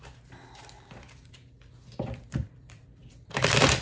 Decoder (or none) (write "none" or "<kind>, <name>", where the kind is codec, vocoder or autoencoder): vocoder, BigVGAN v2